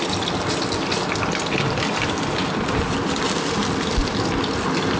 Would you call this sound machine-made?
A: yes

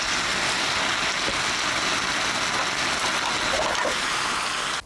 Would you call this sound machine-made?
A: no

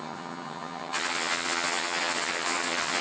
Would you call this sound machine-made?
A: yes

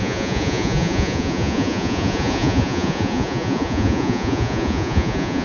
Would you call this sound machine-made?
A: yes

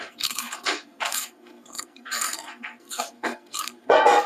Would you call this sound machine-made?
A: yes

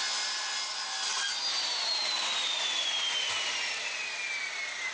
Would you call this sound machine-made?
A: no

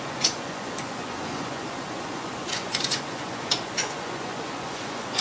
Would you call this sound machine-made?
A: yes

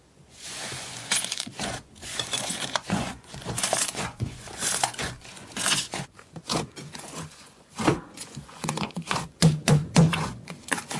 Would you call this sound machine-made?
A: yes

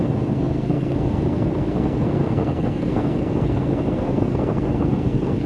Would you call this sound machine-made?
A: yes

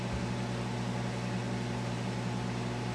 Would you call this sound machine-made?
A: no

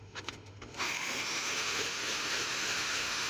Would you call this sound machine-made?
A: yes